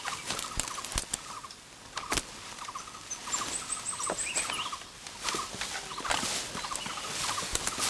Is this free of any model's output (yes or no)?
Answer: yes